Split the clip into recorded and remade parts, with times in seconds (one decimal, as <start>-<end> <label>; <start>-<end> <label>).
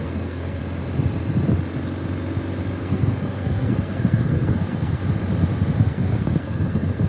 0.0-0.6 remade; 0.6-2.8 recorded; 2.8-5.0 remade; 5.0-5.8 recorded; 5.8-7.1 remade